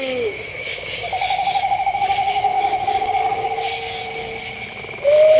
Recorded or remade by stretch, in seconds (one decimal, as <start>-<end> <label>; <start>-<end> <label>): 0.0-4.4 remade; 4.4-5.4 recorded